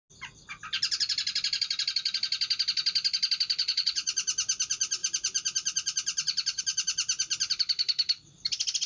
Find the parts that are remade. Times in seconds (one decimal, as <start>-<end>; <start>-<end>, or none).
3.6-4.1